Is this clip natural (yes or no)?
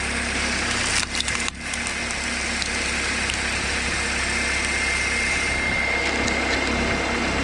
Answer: yes